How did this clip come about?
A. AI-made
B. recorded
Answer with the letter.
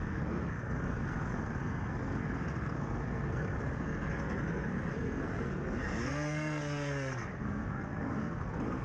A